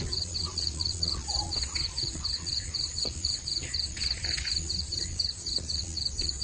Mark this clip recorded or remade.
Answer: remade